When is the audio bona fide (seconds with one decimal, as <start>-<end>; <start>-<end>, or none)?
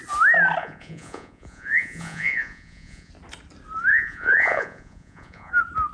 0.0-0.6; 3.1-3.9; 5.5-5.9